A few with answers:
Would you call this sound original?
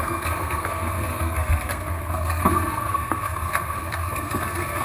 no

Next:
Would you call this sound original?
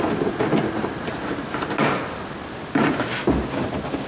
yes